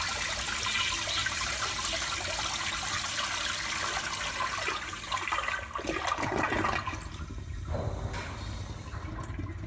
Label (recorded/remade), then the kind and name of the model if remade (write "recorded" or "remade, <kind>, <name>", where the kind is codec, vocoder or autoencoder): recorded